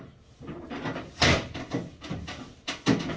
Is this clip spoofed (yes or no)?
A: no